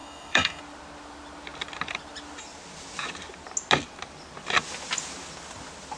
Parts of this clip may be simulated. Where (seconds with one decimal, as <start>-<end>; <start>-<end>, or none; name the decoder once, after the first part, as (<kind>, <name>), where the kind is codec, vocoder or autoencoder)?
0.0-0.6 (autoencoder, DAC-VAE)